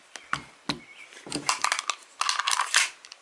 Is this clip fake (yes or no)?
no